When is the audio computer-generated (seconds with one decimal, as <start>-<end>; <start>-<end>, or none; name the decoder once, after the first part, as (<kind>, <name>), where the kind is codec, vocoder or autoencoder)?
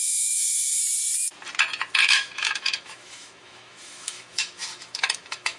0.0-0.8 (autoencoder, DAC-VAE); 2.0-5.6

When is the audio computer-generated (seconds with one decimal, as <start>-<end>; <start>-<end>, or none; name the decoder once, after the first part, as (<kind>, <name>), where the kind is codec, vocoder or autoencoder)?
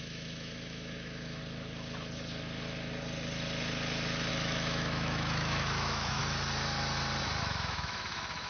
0.0-1.4 (autoencoder, DAC-VAE); 4.3-6.2; 7.4-8.5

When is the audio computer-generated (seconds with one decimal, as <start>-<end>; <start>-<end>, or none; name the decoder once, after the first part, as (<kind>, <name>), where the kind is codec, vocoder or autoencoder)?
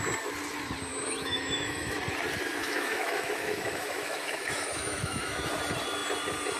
0.9-2.0 (autoencoder, DAC-VAE); 2.6-5.5